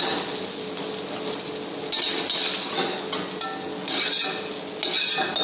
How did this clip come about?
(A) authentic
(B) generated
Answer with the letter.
A